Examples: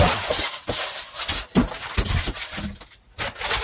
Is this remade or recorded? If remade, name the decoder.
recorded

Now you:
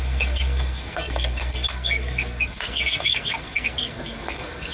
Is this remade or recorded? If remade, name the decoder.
remade, codec, SNAC